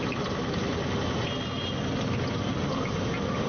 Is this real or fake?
real